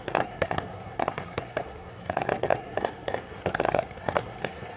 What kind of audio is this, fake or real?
fake